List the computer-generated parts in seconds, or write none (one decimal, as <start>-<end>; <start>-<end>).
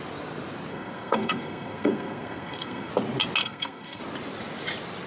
0.7-2.9; 3.4-4.0